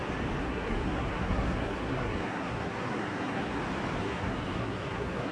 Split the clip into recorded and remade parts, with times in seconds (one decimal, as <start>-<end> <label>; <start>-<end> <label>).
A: 0.0-0.4 recorded; 0.4-3.6 remade; 3.6-4.0 recorded; 4.0-5.3 remade